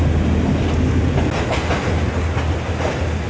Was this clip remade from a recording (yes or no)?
no